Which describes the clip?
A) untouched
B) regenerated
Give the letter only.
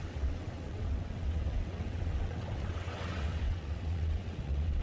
B